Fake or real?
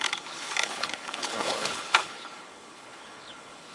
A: fake